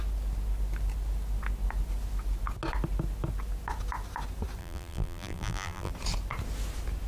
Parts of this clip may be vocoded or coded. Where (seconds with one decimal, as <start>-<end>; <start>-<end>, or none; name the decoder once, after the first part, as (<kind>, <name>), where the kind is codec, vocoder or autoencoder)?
4.6-5.9 (vocoder, BigVGAN v2)

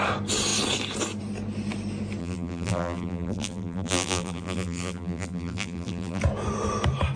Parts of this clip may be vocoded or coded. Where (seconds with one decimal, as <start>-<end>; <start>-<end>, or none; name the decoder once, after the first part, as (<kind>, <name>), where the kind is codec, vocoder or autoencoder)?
2.2-6.2 (vocoder, BigVGAN v2)

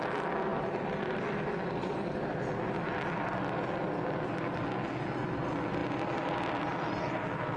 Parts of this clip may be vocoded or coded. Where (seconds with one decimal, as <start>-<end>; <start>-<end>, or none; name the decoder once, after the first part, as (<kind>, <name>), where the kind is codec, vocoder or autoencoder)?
none

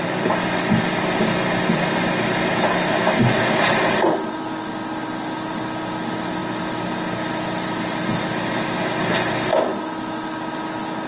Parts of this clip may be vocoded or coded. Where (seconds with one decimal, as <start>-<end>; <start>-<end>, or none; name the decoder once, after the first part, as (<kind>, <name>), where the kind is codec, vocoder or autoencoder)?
none

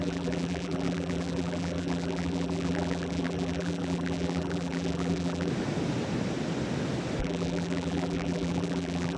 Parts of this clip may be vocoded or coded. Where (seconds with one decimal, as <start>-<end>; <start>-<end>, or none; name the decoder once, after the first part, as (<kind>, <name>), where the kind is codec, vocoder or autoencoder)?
0.0-5.5 (vocoder, BigVGAN v2); 7.2-9.2

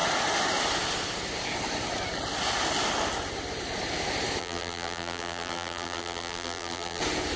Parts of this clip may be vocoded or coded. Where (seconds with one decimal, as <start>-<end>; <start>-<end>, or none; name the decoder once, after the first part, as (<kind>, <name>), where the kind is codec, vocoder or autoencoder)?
4.4-7.0 (vocoder, BigVGAN v2)

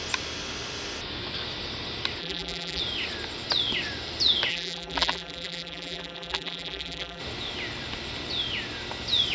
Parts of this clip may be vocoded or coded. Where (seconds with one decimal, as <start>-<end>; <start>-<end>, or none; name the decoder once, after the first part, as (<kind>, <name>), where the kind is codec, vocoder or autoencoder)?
2.2-2.8 (vocoder, BigVGAN v2); 4.5-7.2